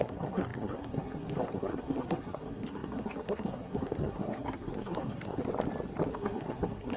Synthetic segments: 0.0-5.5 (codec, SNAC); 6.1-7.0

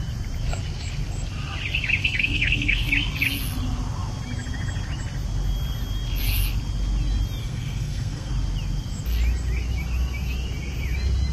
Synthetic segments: 2.0-2.9 (codec, SNAC); 7.4-8.3

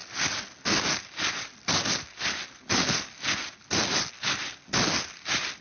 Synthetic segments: none

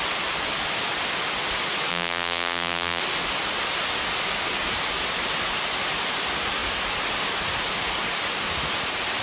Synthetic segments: 1.9-3.0 (vocoder, BigVGAN v2)

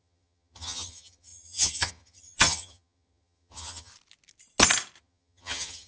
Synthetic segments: 0.0-3.9 (vocoder, HiFi-GAN); 5.0-5.9

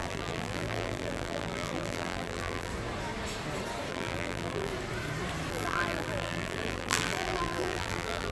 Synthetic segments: 0.0-2.7 (vocoder, BigVGAN v2); 3.9-4.7; 5.5-8.3

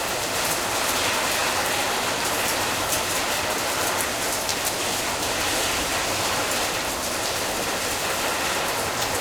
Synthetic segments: 1.4-3.1 (vocoder, BigVGAN v2)